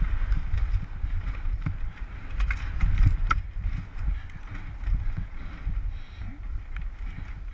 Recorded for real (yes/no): yes